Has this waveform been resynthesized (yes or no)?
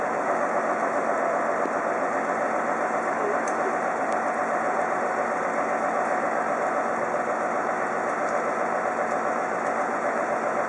no